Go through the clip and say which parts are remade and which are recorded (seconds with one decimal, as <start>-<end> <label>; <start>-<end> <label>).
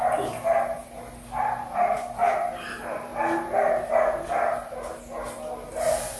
0.0-6.2 recorded